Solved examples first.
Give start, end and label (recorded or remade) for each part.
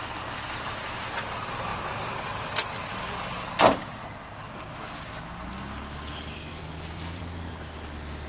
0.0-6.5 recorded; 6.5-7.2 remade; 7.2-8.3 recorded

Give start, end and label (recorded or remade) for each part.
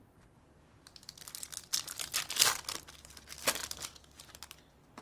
0.0-5.0 recorded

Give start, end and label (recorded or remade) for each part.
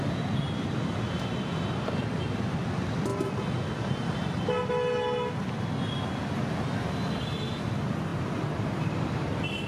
0.0-3.1 remade; 3.1-7.0 recorded; 7.0-8.1 remade; 8.1-8.7 recorded; 8.7-9.7 remade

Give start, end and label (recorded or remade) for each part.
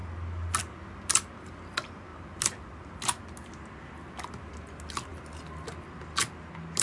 0.0-2.1 recorded; 2.1-3.3 remade; 3.3-4.0 recorded; 4.0-4.5 remade; 4.5-6.8 recorded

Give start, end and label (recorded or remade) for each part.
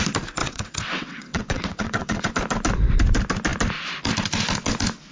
0.0-0.4 recorded; 0.4-2.3 remade; 2.3-5.1 recorded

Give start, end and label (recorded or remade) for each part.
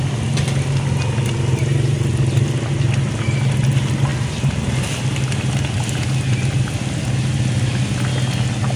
0.0-8.8 recorded